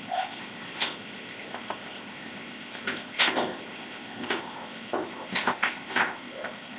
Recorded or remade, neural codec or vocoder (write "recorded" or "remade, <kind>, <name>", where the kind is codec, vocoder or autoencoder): remade, codec, ZipCodec